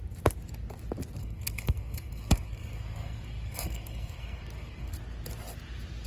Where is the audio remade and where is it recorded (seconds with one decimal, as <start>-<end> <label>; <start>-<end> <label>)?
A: 0.0-1.2 recorded; 1.2-4.9 remade; 4.9-6.1 recorded